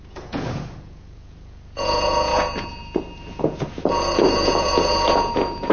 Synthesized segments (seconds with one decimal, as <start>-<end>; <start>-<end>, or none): 0.0-5.7

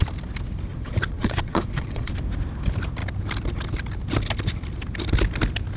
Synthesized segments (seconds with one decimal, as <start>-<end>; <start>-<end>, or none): 0.7-2.1

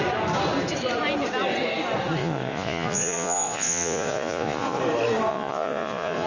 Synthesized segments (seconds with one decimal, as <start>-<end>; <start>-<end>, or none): 2.2-4.8; 5.3-6.3

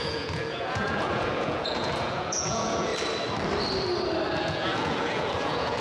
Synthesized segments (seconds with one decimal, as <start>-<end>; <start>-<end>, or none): 0.0-2.9; 4.4-5.8

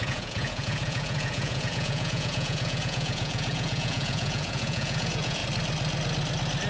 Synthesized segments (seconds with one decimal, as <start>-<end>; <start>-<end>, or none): 0.0-5.4

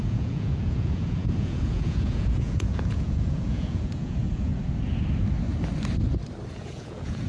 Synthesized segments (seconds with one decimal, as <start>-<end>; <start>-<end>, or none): 0.0-4.5; 6.5-7.3

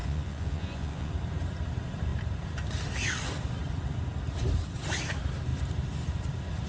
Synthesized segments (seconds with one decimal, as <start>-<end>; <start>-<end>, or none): 0.0-1.1

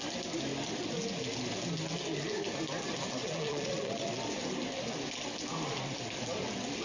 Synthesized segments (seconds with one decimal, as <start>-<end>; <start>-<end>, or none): 3.2-4.1